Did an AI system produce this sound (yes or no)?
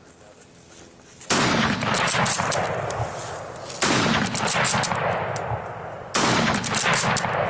no